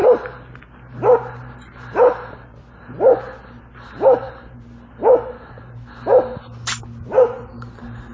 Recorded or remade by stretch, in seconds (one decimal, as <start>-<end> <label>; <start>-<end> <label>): 0.0-8.1 recorded

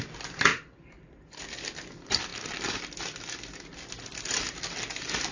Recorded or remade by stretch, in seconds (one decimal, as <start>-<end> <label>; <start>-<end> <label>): 0.0-5.3 recorded

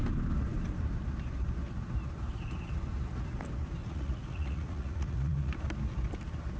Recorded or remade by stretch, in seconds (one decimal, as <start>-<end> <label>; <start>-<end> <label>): 0.0-3.8 recorded; 3.8-5.5 remade; 5.5-6.6 recorded

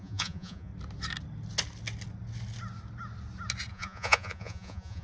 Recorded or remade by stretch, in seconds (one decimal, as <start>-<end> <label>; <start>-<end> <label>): 0.0-0.7 remade; 0.7-3.7 recorded; 3.7-5.0 remade

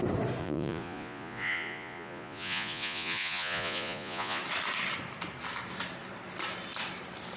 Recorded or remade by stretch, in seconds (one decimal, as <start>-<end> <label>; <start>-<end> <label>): 0.0-0.4 recorded; 0.4-4.4 remade; 4.4-7.4 recorded

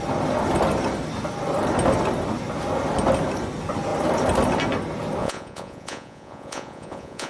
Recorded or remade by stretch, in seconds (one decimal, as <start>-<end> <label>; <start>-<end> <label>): 0.0-5.2 recorded; 5.2-7.3 remade

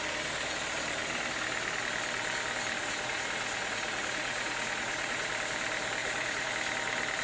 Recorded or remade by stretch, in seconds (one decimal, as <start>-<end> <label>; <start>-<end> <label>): 0.0-2.8 recorded; 2.8-5.3 remade; 5.3-6.0 recorded; 6.0-6.5 remade; 6.5-7.2 recorded

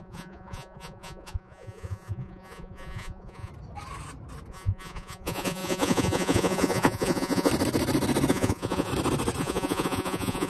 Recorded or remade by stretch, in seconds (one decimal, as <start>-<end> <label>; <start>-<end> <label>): 0.0-3.5 remade; 3.5-4.5 recorded; 4.5-7.5 remade; 7.5-8.3 recorded; 8.3-8.9 remade; 8.9-9.4 recorded; 9.4-10.5 remade